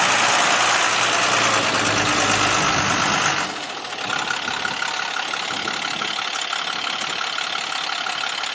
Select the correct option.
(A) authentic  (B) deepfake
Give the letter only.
A